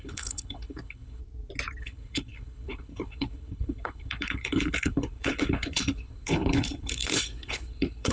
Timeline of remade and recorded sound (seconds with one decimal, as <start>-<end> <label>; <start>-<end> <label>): 0.0-1.2 remade; 1.2-1.8 recorded; 1.8-8.1 remade